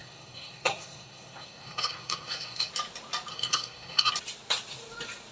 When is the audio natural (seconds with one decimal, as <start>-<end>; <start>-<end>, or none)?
2.7-3.3; 4.1-5.3